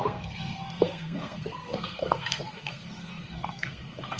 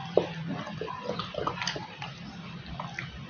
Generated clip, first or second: first